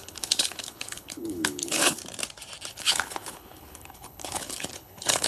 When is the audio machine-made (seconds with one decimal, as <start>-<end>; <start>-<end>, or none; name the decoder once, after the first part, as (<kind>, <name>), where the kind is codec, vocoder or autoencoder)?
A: 0.0-2.0 (codec, HILCodec); 2.7-5.3